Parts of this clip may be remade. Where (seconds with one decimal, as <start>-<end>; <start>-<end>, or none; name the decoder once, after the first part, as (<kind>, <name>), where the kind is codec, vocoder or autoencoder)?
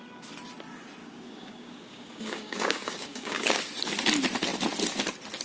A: 1.0-3.6 (codec, DAC)